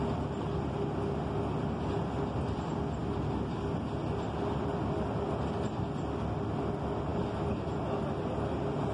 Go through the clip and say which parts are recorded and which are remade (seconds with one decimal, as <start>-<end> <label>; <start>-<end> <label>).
0.0-8.9 recorded